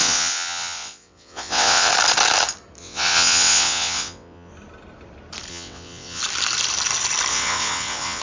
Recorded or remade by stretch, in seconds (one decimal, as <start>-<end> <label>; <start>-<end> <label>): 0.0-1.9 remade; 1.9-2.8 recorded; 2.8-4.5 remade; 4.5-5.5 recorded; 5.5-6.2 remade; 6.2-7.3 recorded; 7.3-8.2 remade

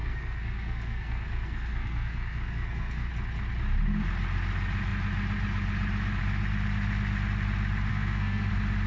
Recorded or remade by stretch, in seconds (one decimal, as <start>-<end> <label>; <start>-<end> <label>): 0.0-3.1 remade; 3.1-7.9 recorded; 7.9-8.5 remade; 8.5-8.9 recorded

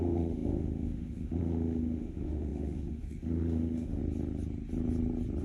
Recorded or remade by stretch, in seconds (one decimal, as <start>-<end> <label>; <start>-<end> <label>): 0.0-4.0 remade; 4.0-5.4 recorded